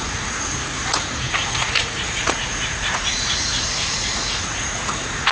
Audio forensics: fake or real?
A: fake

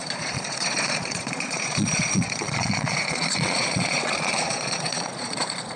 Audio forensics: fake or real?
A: fake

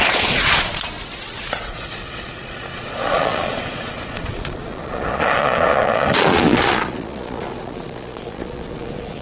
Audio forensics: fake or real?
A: fake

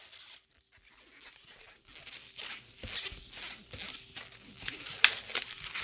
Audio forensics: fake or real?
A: real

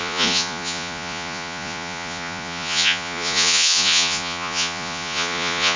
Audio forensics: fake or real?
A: fake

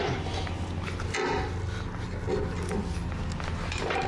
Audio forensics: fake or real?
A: real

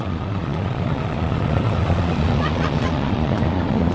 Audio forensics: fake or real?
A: fake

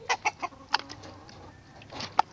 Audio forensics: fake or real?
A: real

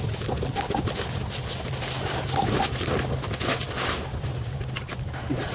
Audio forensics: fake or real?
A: real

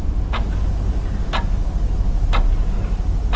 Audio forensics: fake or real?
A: real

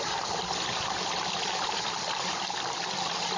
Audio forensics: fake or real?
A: real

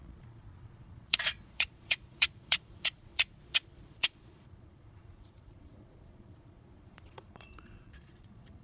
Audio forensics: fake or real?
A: fake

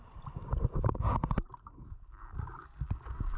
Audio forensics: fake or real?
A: real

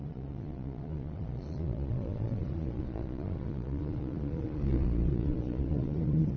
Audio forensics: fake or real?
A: fake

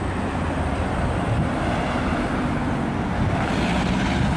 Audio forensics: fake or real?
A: real